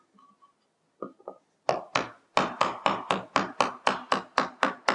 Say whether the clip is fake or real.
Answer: real